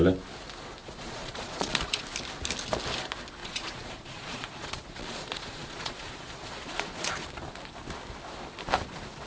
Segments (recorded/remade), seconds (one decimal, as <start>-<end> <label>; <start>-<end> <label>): 0.0-0.8 recorded; 0.8-2.0 remade; 2.0-3.4 recorded; 3.4-7.1 remade; 7.1-9.3 recorded